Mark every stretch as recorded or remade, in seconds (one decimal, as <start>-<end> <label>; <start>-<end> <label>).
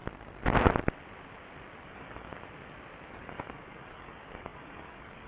0.0-1.9 recorded; 1.9-2.3 remade; 2.3-3.1 recorded; 3.1-5.3 remade